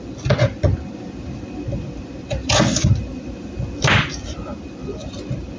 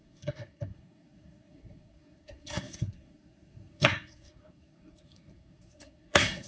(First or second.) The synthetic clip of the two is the second